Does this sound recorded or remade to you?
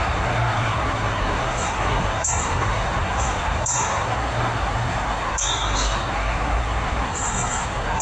remade